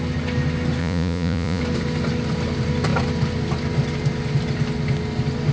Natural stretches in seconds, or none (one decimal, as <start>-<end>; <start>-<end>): 0.0-0.8; 1.6-5.5